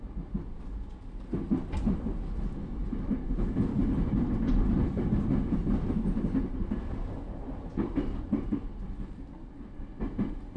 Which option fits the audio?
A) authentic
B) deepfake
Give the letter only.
A